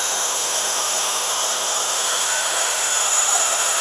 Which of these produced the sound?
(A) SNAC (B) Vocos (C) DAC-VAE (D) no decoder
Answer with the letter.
C